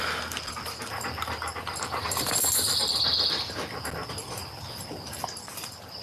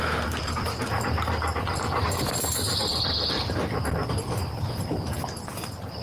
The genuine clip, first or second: first